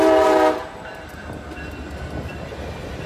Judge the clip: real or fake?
real